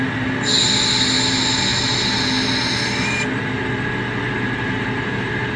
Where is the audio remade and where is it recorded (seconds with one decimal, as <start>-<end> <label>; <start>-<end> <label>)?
0.0-5.6 recorded